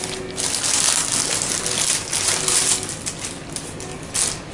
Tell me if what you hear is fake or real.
real